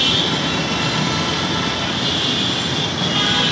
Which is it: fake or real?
real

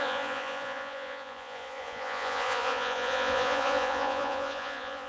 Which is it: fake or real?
fake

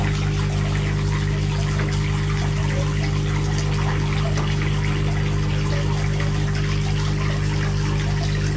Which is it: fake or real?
real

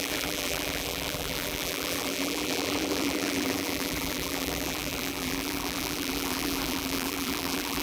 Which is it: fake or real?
fake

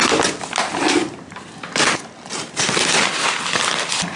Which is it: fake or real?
real